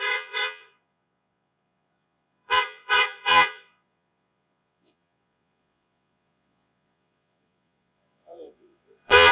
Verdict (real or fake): fake